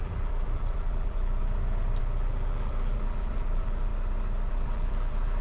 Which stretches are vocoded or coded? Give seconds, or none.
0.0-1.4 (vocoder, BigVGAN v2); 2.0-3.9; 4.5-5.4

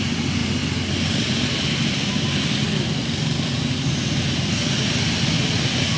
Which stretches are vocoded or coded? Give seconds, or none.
none

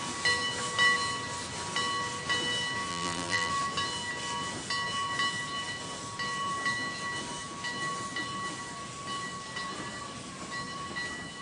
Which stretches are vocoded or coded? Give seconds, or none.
2.9-3.5 (vocoder, BigVGAN v2)

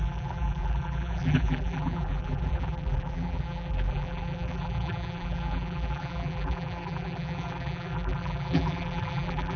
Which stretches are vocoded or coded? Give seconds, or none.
0.0-9.6 (vocoder, BigVGAN v2)

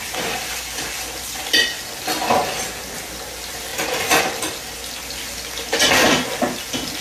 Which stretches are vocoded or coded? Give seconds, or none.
none

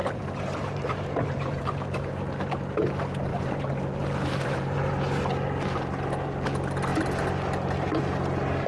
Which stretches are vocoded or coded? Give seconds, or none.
0.0-1.7 (vocoder, BigVGAN v2); 3.3-4.9

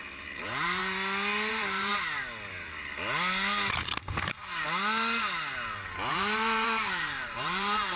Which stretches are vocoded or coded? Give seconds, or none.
0.0-0.8 (vocoder, BigVGAN v2); 1.5-1.9; 6.1-8.0